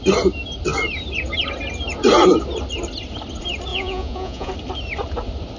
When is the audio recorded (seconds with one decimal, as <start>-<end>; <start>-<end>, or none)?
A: 0.0-3.7; 4.5-5.6